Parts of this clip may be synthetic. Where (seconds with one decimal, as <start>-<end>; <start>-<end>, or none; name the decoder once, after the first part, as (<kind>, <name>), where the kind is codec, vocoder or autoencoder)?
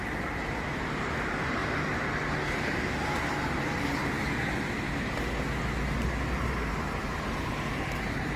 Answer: 0.0-1.6 (vocoder, BigVGAN v2); 3.6-4.0; 7.2-8.4